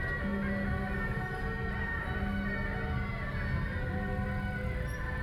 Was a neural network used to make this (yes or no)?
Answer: no